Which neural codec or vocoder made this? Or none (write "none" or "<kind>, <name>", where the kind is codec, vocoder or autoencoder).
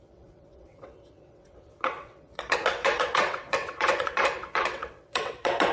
vocoder, WaveNeXt